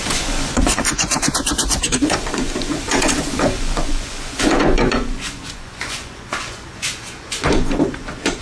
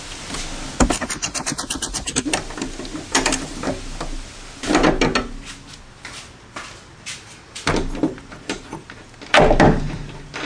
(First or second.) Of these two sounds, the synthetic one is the first